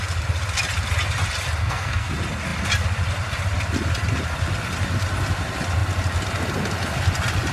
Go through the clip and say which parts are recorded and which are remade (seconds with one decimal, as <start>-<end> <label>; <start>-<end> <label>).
0.0-1.6 recorded; 1.6-2.1 remade; 2.1-7.5 recorded